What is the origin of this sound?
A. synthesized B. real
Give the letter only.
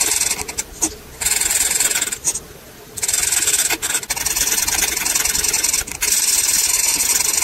B